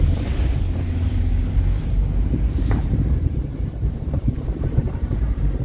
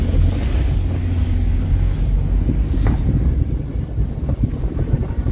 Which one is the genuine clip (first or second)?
second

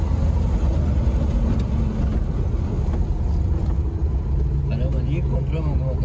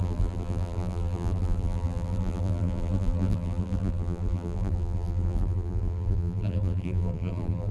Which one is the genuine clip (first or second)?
first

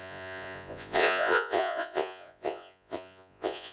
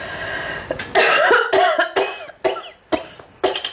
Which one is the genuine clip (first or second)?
second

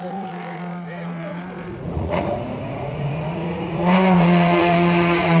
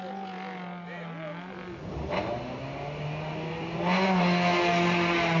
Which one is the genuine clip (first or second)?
second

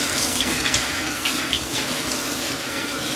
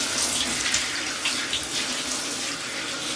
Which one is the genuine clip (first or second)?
second